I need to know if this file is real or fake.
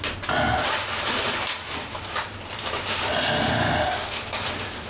real